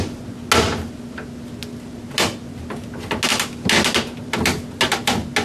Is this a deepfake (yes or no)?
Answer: no